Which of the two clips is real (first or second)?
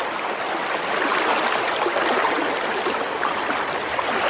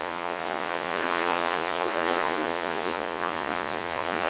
first